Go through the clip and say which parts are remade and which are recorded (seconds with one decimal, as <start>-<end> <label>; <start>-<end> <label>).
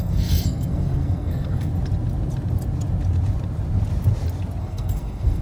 0.0-1.7 remade; 1.7-4.6 recorded; 4.6-5.4 remade